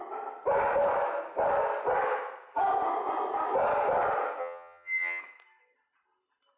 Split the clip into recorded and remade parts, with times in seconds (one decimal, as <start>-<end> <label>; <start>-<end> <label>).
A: 0.0-4.4 recorded; 4.4-5.2 remade; 5.2-6.6 recorded